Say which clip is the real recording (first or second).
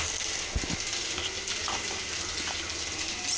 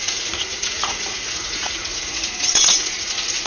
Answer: first